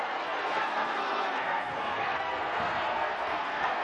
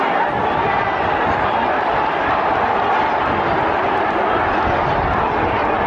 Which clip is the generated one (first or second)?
first